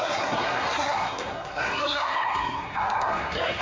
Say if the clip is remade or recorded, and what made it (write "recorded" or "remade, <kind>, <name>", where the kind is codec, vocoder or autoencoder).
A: remade, codec, SNAC